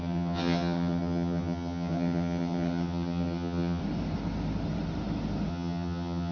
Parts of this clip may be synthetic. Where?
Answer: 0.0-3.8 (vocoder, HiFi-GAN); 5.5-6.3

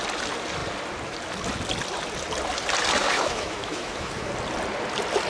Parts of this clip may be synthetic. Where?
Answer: 3.0-4.3 (autoencoder, DAC-VAE)

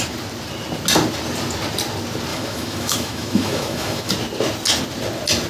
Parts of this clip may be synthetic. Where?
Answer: 2.3-4.1 (autoencoder, DAC-VAE)

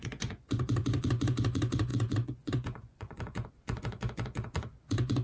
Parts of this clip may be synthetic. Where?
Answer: 0.0-5.2 (vocoder, Vocos)

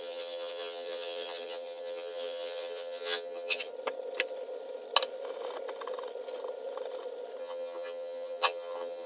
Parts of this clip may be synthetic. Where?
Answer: 0.0-3.7 (vocoder, HiFi-GAN); 7.4-9.1

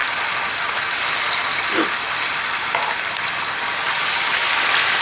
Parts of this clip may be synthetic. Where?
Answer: 4.4-5.0 (vocoder, BigVGAN v2)

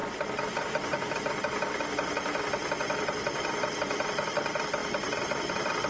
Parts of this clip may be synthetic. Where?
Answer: 0.0-1.2 (vocoder, BigVGAN v2); 4.8-5.5